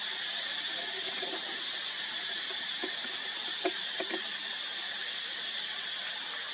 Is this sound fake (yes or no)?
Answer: no